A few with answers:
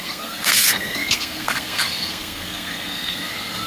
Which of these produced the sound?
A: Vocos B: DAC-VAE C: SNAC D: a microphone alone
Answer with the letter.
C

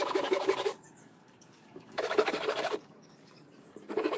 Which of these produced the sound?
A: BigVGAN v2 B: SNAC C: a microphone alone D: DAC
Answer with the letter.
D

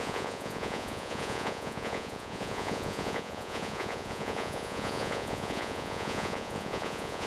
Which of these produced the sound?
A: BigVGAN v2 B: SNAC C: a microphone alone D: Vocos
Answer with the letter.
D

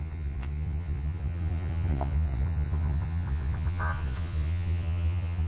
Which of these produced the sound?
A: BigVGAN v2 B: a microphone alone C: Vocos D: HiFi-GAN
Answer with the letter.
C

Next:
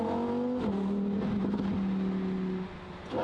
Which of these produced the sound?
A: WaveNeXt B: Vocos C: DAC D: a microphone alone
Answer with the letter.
D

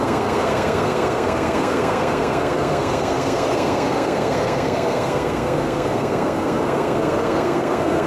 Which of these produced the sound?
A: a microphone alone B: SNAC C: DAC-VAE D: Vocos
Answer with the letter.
B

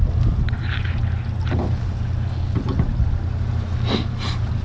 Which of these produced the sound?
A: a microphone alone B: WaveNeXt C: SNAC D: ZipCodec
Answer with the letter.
A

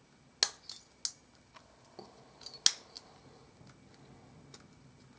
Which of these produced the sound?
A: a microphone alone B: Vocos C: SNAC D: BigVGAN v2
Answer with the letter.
A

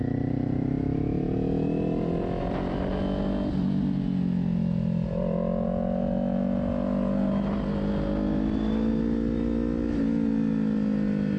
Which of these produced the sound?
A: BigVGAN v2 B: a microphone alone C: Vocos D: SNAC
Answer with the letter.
B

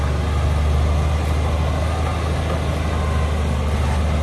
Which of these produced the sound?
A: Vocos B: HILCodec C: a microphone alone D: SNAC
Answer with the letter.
C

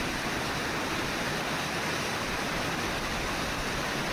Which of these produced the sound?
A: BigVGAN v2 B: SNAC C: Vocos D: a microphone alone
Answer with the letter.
D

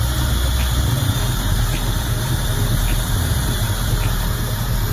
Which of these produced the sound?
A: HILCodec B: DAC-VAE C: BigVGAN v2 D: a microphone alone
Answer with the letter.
C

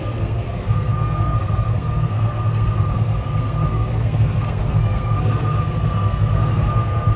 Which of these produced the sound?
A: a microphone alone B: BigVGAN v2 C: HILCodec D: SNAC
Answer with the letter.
D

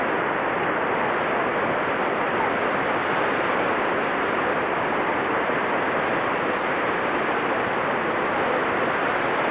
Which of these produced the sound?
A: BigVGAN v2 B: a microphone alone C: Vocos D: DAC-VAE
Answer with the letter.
B